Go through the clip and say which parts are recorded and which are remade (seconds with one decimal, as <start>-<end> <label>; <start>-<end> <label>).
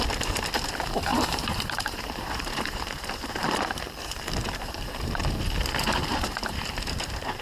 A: 0.0-1.1 recorded; 1.1-3.7 remade; 3.7-4.4 recorded; 4.4-5.2 remade; 5.2-6.1 recorded; 6.1-7.4 remade